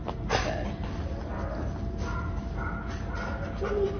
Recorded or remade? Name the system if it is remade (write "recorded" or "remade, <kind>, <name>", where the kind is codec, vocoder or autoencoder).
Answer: recorded